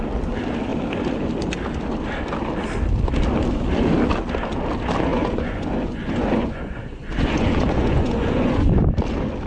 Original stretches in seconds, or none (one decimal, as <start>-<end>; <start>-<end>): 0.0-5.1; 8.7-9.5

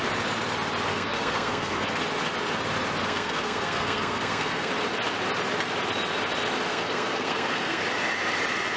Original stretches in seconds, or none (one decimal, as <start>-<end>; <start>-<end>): 0.0-0.9; 2.0-3.0; 4.7-6.7; 7.8-8.8

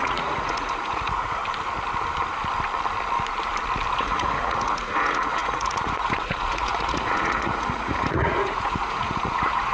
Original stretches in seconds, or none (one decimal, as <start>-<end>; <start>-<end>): 1.4-3.9

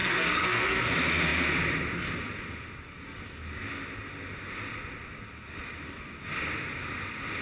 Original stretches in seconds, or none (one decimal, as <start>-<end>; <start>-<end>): 0.8-7.4

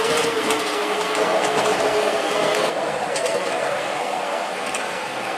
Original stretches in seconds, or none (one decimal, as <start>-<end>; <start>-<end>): none

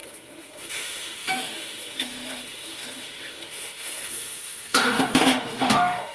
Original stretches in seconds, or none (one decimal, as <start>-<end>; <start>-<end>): none

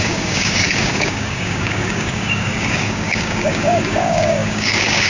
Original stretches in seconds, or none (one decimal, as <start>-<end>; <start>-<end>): none